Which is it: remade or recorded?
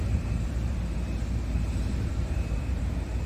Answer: remade